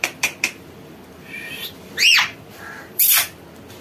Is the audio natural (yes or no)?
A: no